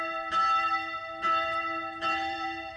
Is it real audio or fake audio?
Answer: fake